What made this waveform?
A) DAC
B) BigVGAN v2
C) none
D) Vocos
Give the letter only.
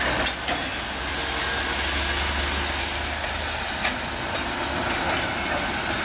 C